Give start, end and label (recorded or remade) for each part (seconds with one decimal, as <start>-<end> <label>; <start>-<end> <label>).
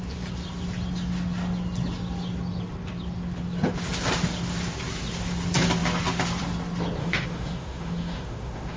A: 0.0-7.0 recorded; 7.0-8.8 remade